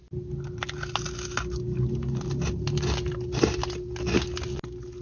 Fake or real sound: real